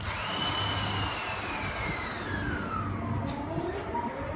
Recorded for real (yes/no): yes